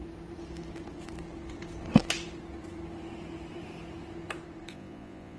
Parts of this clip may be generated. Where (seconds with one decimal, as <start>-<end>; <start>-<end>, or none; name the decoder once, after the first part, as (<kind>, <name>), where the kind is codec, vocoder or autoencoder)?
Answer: 4.7-5.4 (vocoder, Vocos)